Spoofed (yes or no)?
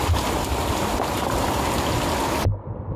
no